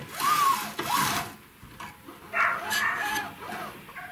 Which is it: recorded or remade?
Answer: recorded